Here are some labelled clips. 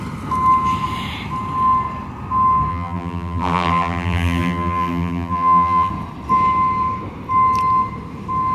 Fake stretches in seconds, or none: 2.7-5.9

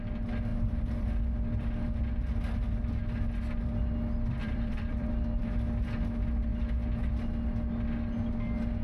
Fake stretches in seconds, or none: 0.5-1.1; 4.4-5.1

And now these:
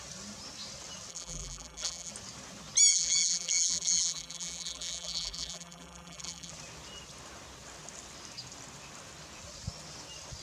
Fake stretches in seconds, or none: 1.1-2.1; 2.9-6.5

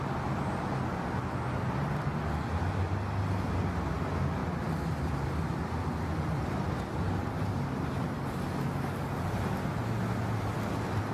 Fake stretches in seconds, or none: none